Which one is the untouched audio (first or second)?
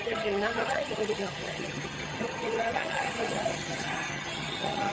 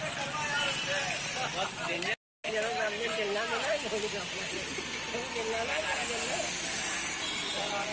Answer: second